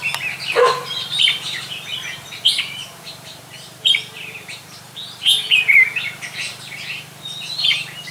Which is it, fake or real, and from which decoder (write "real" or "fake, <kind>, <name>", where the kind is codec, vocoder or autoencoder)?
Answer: fake, vocoder, BigVGAN v2